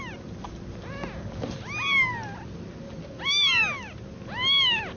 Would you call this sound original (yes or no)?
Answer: yes